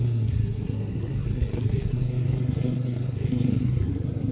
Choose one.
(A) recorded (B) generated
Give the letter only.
B